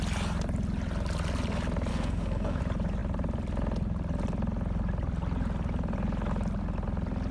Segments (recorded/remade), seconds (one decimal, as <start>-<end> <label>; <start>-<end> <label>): 0.0-1.9 recorded; 1.9-2.6 remade; 2.6-7.3 recorded